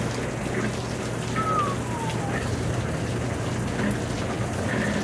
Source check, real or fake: real